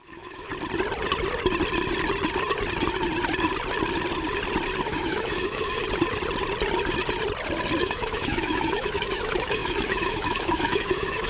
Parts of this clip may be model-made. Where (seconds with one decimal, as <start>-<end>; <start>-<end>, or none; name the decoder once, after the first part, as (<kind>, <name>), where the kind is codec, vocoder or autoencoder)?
0.0-0.5 (autoencoder, DAC-VAE); 4.9-5.8; 7.8-11.3